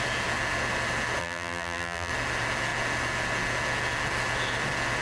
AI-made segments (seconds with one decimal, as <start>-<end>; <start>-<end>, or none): 1.2-2.1